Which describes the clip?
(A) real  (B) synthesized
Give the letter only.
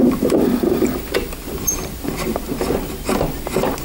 B